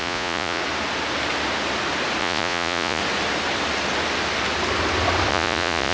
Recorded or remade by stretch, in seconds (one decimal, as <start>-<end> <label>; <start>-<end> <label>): 0.0-0.6 remade; 0.6-2.2 recorded; 2.2-3.0 remade; 3.0-5.3 recorded; 5.3-5.9 remade